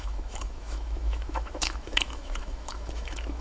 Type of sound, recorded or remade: remade